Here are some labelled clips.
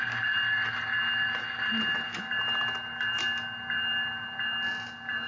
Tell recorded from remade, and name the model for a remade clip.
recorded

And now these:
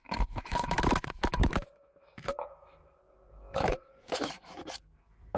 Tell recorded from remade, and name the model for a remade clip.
remade, autoencoder, DAC-VAE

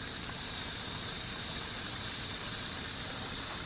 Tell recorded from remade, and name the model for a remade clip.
remade, vocoder, BigVGAN v2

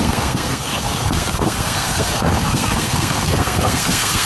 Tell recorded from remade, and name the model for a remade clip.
remade, codec, SNAC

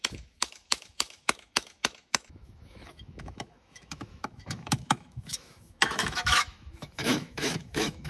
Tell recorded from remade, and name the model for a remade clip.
remade, autoencoder, DAC-VAE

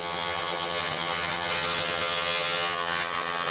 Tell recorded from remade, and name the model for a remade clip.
remade, vocoder, HiFi-GAN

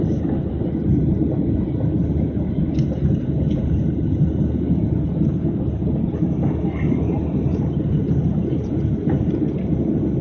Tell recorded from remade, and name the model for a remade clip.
recorded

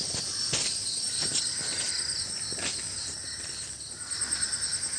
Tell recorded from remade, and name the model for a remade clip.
recorded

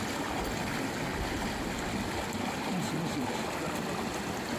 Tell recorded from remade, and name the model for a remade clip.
recorded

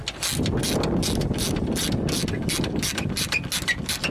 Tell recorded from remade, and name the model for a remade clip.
recorded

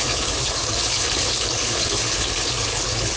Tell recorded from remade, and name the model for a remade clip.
remade, codec, HILCodec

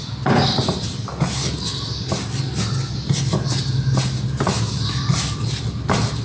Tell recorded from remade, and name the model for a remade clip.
recorded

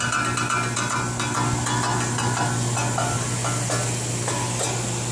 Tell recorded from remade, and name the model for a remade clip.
recorded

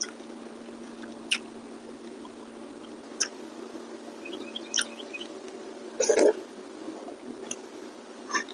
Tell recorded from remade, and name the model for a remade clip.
recorded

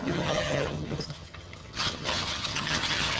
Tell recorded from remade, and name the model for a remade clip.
remade, vocoder, HiFi-GAN